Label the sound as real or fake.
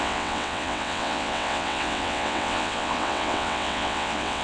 fake